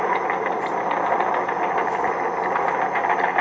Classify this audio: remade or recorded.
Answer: recorded